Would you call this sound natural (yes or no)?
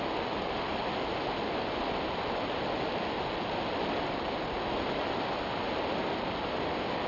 yes